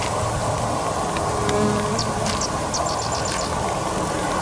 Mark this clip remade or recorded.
recorded